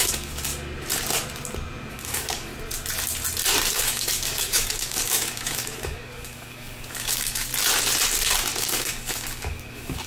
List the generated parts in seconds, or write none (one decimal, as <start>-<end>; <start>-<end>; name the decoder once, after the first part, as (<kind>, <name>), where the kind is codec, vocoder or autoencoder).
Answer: 0.0-0.5 (codec, DAC); 1.9-2.5; 3.7-7.5; 8.6-10.1